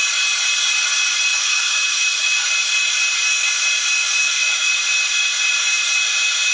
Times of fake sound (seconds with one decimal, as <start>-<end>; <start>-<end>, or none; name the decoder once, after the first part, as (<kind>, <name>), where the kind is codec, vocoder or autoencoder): 1.3-2.5 (autoencoder, DAC-VAE); 4.2-4.7